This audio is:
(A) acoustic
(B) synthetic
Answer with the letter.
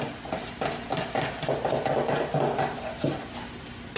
A